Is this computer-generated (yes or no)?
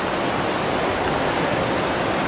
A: yes